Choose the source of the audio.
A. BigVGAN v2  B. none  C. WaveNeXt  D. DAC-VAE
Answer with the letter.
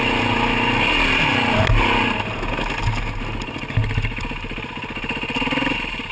B